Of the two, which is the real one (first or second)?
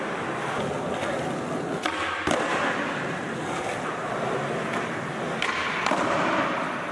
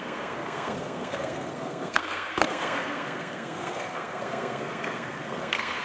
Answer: first